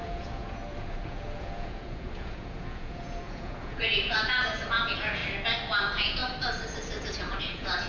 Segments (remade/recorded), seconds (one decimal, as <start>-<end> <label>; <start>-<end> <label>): 0.0-5.2 remade; 5.2-5.8 recorded; 5.8-6.2 remade; 6.2-7.0 recorded; 7.0-7.9 remade